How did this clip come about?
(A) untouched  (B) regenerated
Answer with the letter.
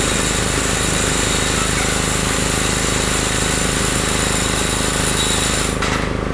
A